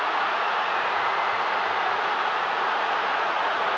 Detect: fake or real fake